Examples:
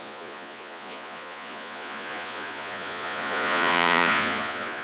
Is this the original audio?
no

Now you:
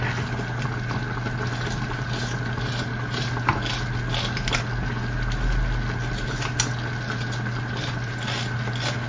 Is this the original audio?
yes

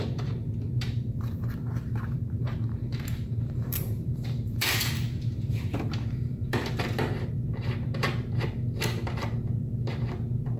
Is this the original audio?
no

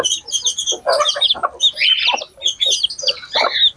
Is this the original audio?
yes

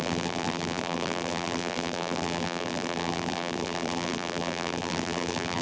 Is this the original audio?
no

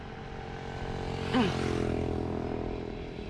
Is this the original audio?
yes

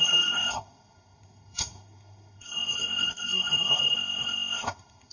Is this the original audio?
no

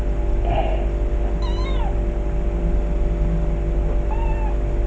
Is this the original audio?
yes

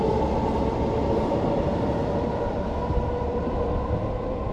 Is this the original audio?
yes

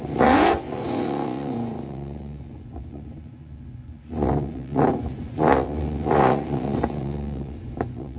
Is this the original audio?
no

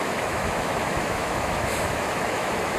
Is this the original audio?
no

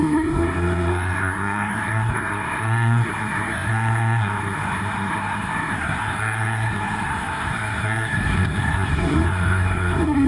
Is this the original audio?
no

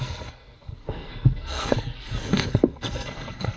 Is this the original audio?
no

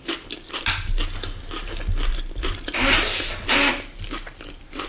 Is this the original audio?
yes